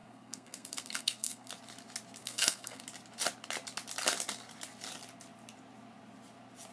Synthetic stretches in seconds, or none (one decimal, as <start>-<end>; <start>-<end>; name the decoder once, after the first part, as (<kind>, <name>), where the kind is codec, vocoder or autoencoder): 0.0-1.5 (codec, SNAC); 2.2-2.8